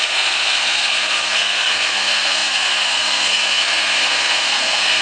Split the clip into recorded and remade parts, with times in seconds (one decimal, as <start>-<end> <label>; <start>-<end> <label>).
0.0-5.0 remade